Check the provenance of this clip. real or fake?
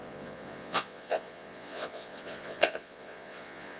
fake